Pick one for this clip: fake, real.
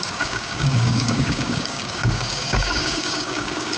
fake